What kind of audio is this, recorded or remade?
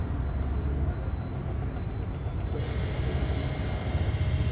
recorded